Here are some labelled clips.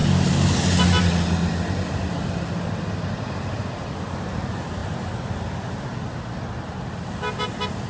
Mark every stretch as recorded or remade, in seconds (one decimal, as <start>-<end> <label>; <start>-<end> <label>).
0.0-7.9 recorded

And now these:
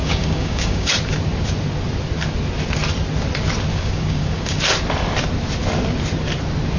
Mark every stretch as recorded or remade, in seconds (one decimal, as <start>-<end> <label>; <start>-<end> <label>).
0.0-0.9 remade; 0.9-3.7 recorded; 3.7-4.6 remade; 4.6-6.8 recorded

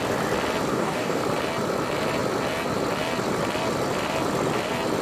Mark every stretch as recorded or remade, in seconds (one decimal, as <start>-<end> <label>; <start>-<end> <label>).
0.0-0.7 recorded; 0.7-1.2 remade; 1.2-5.0 recorded

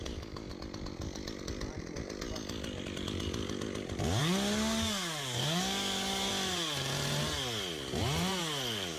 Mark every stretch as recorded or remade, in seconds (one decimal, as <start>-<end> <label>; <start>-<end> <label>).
0.0-0.5 remade; 0.5-4.2 recorded; 4.2-6.3 remade; 6.3-8.4 recorded; 8.4-9.0 remade

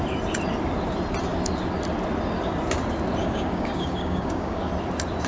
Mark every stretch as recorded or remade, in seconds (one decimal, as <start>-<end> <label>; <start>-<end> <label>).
0.0-3.2 recorded; 3.2-4.7 remade; 4.7-5.3 recorded

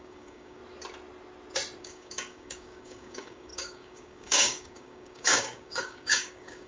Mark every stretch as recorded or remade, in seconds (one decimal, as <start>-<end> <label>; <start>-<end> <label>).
0.0-0.6 remade; 0.6-1.8 recorded; 1.8-6.7 remade